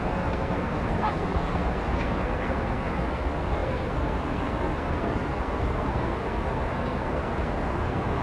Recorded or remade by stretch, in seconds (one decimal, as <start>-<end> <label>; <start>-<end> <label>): 0.0-8.2 remade